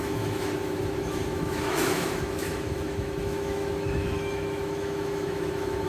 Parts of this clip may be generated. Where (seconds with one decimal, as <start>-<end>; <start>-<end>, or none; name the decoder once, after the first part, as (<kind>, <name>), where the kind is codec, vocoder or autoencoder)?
0.0-5.9 (autoencoder, DAC-VAE)